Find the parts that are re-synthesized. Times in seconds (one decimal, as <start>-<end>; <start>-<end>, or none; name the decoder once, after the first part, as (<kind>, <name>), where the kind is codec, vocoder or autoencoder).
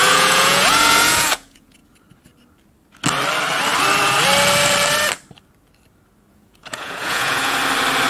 0.0-1.8 (vocoder, Vocos); 6.3-7.6